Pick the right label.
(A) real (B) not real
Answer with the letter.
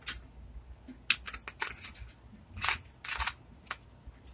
A